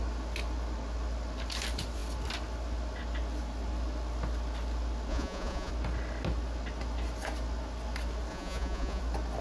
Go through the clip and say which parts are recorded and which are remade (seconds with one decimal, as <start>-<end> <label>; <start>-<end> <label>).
0.0-5.1 recorded; 5.1-5.7 remade; 5.7-8.3 recorded; 8.3-9.0 remade; 9.0-9.4 recorded